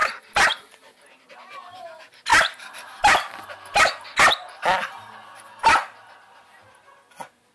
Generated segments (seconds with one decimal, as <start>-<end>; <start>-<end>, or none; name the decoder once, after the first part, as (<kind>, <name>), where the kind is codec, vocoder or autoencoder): none